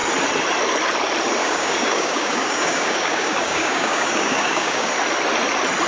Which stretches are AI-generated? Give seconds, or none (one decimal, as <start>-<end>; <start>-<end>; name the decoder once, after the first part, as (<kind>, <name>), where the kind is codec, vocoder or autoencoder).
1.4-4.9 (codec, DAC)